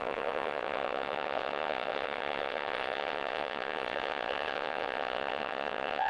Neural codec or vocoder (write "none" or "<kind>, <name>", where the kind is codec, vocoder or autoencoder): vocoder, WaveNeXt